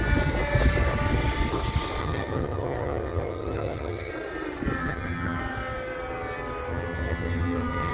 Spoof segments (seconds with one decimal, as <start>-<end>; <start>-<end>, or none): 2.0-4.1; 4.8-5.4; 6.7-7.9